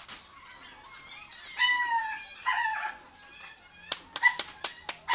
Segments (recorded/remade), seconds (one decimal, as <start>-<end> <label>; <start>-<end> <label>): 0.0-5.1 recorded